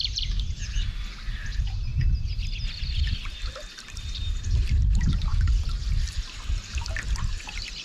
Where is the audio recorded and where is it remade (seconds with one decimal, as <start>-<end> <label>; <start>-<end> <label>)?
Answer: 0.0-7.8 recorded